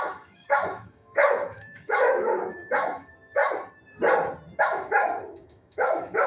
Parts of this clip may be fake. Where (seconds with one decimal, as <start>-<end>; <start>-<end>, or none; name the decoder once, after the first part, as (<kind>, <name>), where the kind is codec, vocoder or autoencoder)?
0.0-3.4 (autoencoder, DAC-VAE); 4.6-6.3